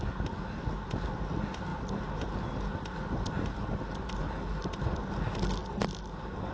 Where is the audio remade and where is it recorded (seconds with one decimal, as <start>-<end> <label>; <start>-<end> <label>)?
0.0-6.5 recorded